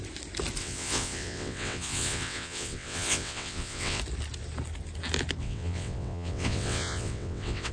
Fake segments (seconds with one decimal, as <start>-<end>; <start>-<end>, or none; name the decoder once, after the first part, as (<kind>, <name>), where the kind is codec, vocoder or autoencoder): 0.6-4.0 (vocoder, WaveNeXt); 5.4-7.7